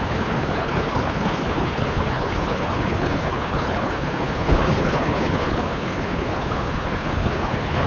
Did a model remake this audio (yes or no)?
yes